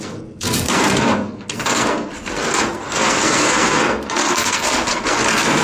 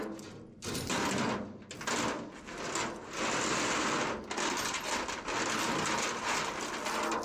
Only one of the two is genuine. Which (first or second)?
second